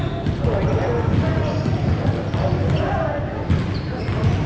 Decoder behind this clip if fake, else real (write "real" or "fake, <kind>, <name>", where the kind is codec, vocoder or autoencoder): real